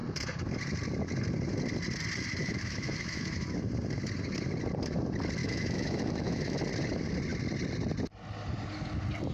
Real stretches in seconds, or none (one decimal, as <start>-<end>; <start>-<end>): 0.0-2.4; 3.7-5.4; 6.6-9.3